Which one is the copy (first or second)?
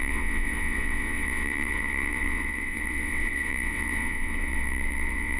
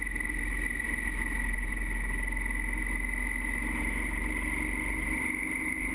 first